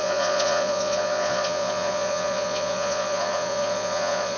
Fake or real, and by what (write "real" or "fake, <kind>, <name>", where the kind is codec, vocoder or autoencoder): fake, vocoder, Vocos